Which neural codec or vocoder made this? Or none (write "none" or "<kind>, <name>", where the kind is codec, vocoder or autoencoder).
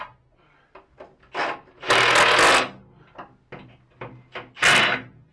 none